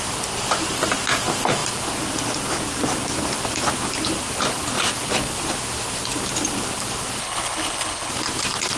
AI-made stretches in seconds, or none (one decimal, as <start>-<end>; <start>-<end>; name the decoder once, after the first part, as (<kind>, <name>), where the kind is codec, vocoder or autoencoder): 7.2-8.1 (codec, HILCodec)